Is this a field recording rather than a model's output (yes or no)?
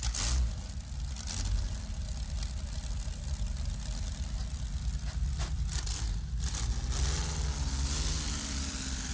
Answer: yes